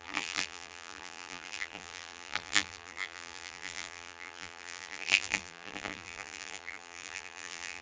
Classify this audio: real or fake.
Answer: fake